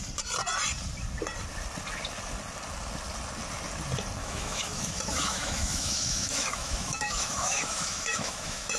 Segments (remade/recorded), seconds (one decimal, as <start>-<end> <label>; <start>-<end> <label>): 0.0-4.2 recorded; 4.2-8.8 remade